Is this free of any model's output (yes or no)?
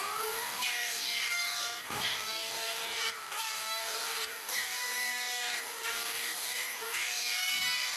no